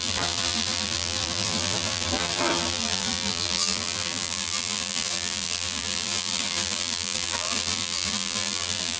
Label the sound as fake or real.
fake